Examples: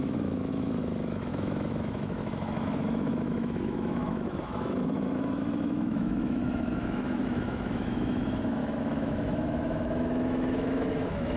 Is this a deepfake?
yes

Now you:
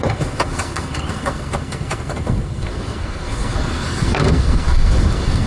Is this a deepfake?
yes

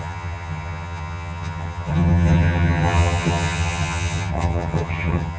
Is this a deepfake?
yes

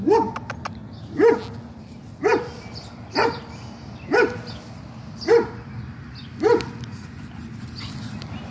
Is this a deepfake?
no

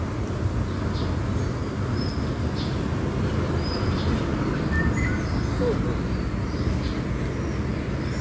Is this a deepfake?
no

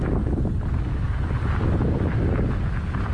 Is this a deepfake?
no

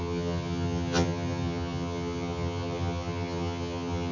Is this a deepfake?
yes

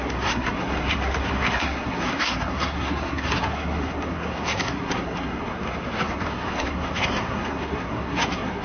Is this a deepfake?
yes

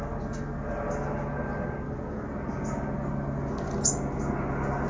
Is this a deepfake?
no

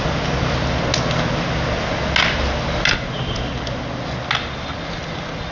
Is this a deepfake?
no